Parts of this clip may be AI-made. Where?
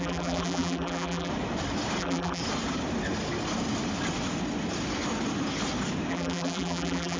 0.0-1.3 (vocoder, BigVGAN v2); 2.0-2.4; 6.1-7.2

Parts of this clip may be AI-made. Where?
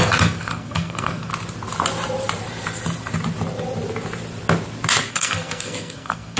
0.0-1.3 (codec, SNAC); 5.1-6.4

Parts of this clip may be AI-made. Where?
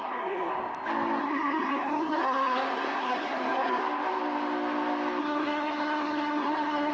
0.0-0.5 (codec, SNAC); 1.2-3.8; 5.2-6.9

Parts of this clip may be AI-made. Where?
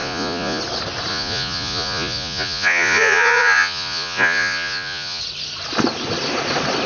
0.0-0.6 (vocoder, Vocos); 1.1-5.2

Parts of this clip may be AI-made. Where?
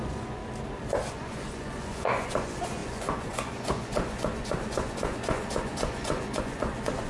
0.0-0.4 (vocoder, Vocos); 1.1-7.1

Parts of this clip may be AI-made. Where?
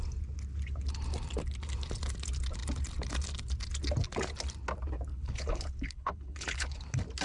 5.1-6.8 (codec, HILCodec)